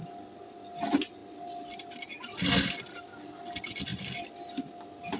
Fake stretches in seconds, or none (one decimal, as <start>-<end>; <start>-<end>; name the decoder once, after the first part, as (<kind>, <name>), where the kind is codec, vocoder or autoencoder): none